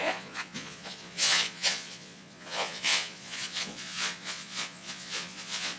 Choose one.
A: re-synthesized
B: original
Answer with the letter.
A